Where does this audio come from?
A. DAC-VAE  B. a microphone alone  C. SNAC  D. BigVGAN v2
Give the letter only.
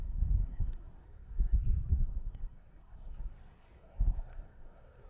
C